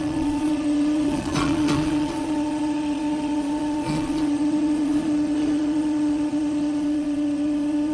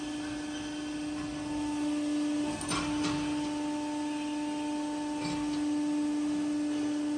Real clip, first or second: second